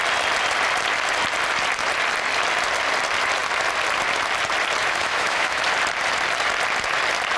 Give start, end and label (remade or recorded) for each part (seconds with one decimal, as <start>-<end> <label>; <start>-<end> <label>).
0.0-4.8 recorded; 4.8-5.6 remade; 5.6-7.4 recorded